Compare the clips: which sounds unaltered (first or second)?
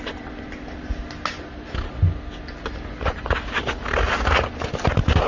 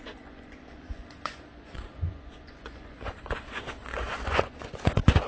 first